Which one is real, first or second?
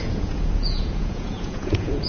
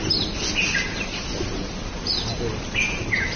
second